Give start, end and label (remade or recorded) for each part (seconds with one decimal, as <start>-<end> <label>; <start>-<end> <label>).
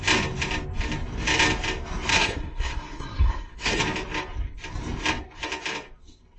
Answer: 0.0-2.1 recorded; 2.1-3.8 remade; 3.8-6.4 recorded